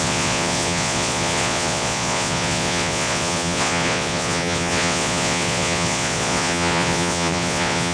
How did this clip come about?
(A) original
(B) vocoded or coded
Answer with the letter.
B